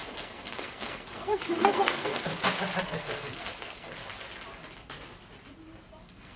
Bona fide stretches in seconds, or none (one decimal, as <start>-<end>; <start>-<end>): 2.3-2.8; 4.0-6.0